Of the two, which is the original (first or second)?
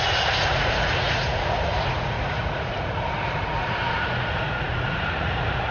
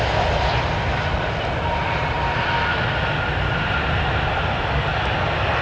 second